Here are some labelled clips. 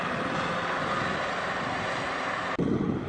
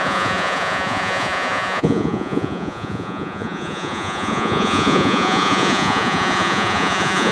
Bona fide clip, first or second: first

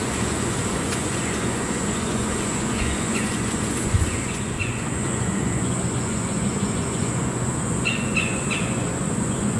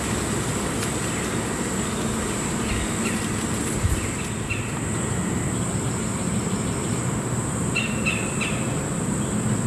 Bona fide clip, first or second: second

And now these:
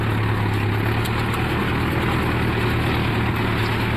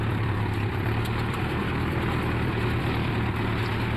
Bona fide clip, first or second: first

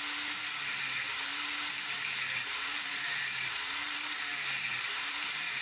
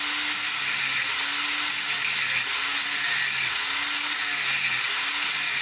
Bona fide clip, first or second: second